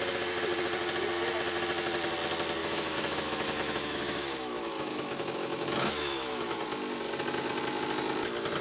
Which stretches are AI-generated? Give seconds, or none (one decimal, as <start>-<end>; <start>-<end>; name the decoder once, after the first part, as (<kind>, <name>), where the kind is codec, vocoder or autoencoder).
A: 2.6-6.6 (autoencoder, DAC-VAE)